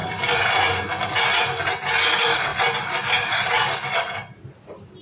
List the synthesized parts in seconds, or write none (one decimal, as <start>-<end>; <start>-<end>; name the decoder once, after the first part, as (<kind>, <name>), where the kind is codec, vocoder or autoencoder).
none